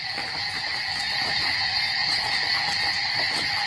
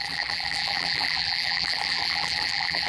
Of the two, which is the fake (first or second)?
second